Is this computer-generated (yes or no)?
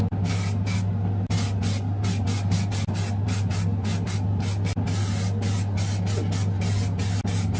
no